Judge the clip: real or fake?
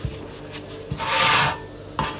real